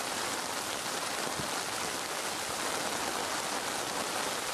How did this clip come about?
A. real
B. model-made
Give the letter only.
A